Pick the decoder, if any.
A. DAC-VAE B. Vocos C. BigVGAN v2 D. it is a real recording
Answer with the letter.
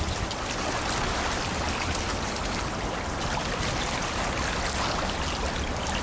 D